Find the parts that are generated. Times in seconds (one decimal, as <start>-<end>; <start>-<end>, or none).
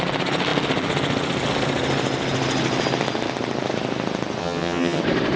4.4-5.0